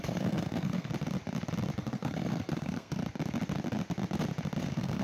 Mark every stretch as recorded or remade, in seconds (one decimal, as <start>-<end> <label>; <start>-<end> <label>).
0.0-0.9 remade; 0.9-1.8 recorded; 1.8-3.0 remade; 3.0-4.6 recorded; 4.6-5.0 remade